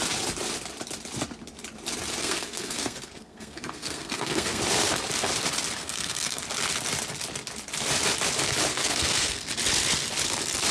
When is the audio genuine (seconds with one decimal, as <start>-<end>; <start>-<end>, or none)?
0.0-2.2; 4.6-5.8; 6.4-8.7; 9.5-10.7